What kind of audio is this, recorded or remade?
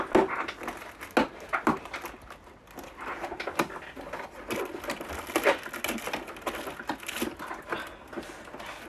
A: recorded